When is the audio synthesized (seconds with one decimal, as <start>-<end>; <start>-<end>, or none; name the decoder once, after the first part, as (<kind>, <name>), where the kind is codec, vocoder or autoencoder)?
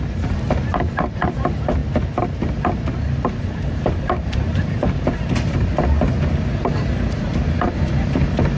0.0-1.8 (vocoder, BigVGAN v2); 3.4-5.7; 6.5-8.6